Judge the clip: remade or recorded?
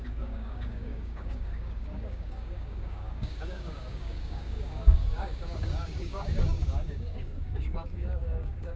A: remade